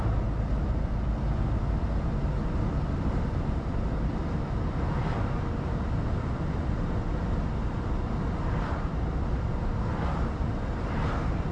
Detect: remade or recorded recorded